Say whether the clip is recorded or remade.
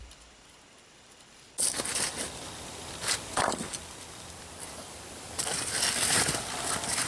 remade